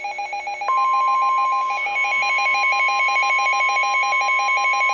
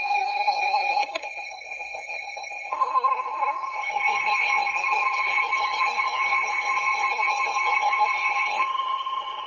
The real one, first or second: first